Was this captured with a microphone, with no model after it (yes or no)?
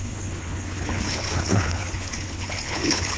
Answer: no